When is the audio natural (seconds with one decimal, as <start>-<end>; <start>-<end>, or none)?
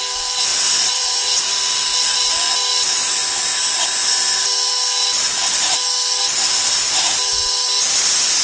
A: 0.0-0.5; 1.5-8.4